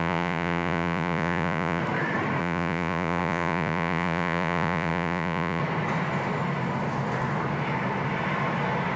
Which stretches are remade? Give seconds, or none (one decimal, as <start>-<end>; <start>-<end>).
0.0-1.8; 2.4-5.6